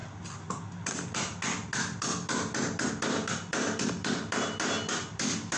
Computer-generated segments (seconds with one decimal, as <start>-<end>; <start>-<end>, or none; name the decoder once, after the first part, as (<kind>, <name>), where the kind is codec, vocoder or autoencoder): none